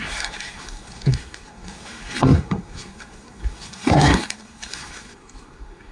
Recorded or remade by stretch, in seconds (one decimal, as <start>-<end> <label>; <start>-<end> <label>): 0.0-5.9 remade